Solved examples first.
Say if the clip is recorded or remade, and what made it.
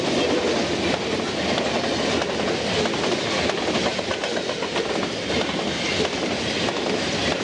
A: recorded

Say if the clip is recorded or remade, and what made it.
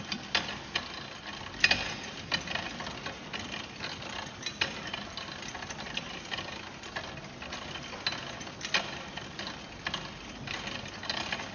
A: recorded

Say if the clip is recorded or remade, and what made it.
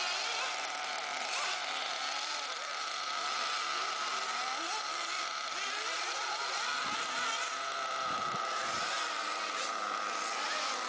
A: recorded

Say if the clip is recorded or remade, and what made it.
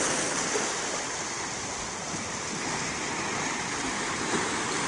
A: recorded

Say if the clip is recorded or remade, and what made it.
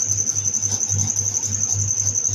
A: recorded